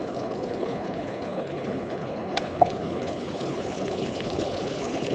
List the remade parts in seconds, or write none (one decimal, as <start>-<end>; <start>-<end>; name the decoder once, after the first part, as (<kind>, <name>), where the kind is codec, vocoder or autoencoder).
0.0-5.1 (codec, HILCodec)